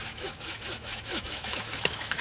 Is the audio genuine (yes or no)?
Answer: no